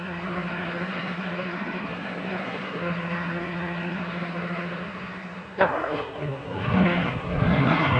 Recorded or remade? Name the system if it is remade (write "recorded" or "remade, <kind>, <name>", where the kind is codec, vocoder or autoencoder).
remade, codec, SNAC